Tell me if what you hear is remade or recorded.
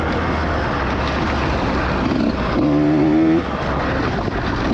recorded